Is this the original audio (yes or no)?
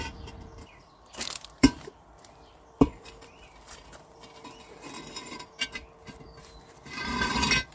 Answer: no